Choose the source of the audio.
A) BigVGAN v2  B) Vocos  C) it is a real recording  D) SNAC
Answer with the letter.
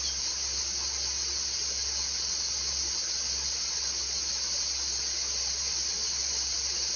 C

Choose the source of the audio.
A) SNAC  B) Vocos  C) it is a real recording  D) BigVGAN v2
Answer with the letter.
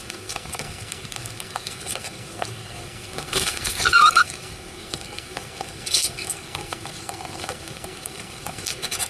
A